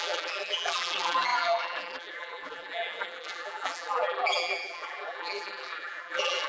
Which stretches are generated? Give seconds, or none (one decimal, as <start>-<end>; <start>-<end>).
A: 0.0-6.5